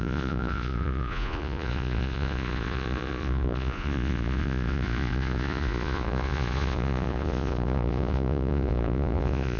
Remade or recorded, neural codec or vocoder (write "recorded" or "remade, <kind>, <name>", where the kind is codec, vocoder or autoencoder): remade, vocoder, Vocos